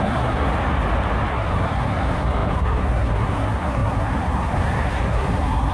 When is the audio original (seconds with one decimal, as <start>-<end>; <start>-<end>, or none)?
0.5-1.3